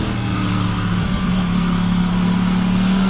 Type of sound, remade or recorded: remade